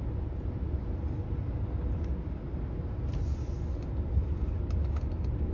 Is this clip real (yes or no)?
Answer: yes